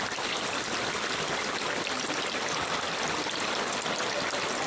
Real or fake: real